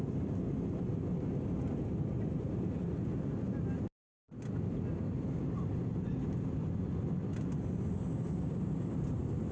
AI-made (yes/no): no